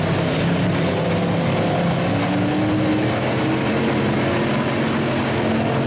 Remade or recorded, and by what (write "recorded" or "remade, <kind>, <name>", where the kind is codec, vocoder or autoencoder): recorded